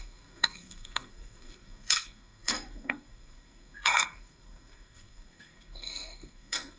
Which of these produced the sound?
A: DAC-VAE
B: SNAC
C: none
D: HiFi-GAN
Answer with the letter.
B